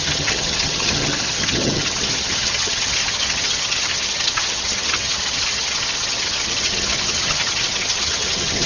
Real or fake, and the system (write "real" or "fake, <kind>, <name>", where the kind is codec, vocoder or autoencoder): fake, vocoder, HiFi-GAN